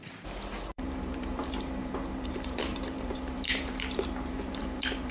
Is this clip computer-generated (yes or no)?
yes